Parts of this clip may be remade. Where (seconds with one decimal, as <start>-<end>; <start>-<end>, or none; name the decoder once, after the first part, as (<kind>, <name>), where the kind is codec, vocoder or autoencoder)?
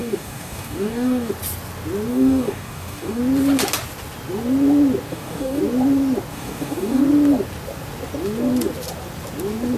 0.0-1.3 (codec, DAC); 2.1-3.2; 5.1-5.6; 6.3-7.0